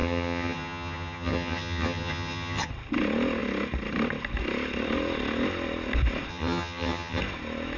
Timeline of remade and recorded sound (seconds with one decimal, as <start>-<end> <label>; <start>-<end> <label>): 0.0-2.7 remade; 2.7-6.3 recorded; 6.3-7.2 remade; 7.2-7.8 recorded